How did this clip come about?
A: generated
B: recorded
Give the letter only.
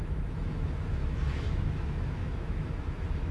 A